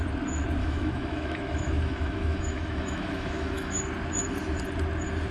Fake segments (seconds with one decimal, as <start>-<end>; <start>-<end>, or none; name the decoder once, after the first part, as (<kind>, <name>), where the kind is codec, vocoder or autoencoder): 0.6-3.8 (autoencoder, DAC-VAE)